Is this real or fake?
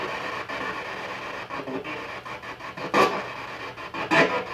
real